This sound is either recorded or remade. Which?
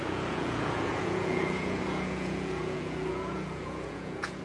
remade